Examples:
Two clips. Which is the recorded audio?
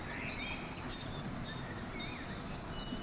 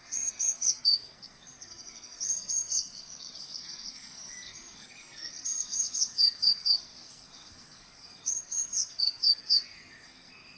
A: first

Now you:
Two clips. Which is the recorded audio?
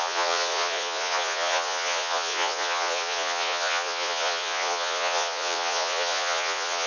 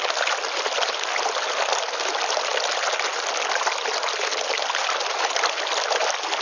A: second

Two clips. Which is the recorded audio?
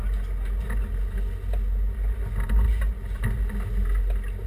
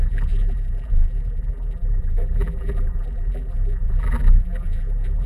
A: first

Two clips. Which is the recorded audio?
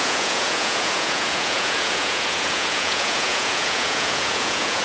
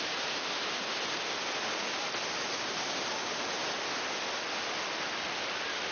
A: second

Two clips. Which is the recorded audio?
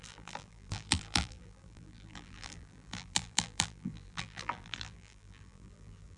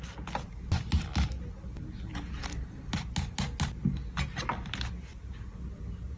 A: second